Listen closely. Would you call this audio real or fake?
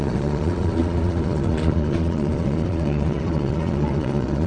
fake